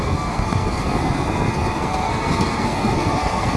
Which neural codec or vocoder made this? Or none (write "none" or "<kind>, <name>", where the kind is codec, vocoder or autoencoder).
codec, SNAC